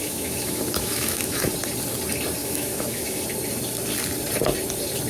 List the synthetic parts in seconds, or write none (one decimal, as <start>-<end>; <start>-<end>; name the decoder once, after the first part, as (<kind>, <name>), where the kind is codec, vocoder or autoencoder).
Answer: 0.0-1.5 (autoencoder, DAC-VAE); 2.4-3.2